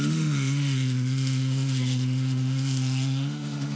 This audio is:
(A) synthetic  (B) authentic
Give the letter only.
A